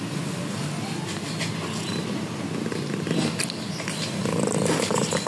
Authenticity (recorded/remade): recorded